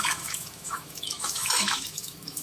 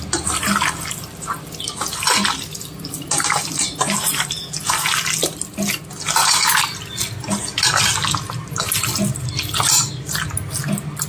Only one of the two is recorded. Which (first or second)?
second